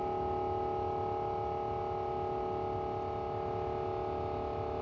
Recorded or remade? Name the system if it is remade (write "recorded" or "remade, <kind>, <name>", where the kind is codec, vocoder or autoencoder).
recorded